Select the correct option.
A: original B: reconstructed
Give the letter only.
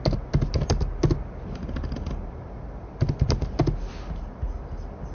A